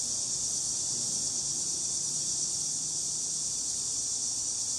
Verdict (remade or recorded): recorded